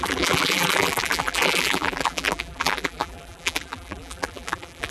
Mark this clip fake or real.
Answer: fake